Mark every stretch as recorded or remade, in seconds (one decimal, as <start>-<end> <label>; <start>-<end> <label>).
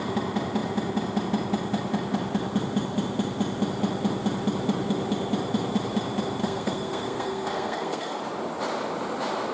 0.0-6.4 recorded; 6.4-8.2 remade; 8.2-9.5 recorded